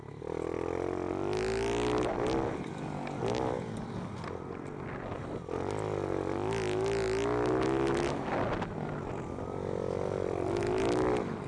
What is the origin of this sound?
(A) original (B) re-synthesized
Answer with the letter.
A